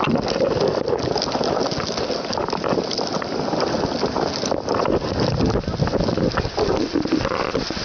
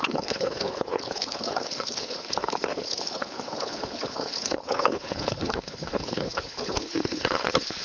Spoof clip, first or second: second